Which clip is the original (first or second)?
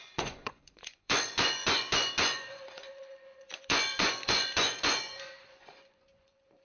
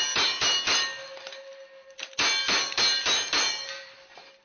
second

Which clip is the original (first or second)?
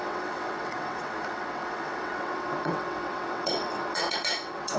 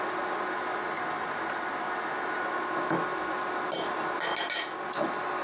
second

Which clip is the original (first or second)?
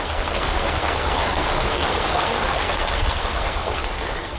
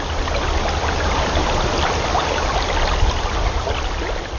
second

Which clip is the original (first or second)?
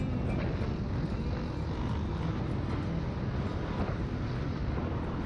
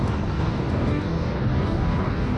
first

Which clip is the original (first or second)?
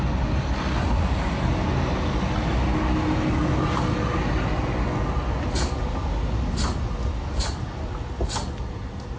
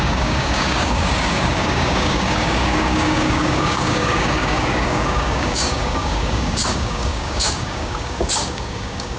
first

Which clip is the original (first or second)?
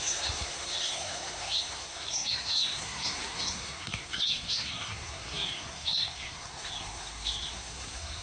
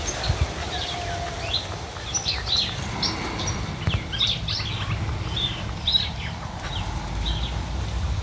second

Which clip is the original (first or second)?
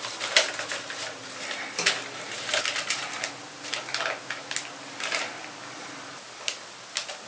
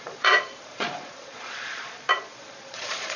first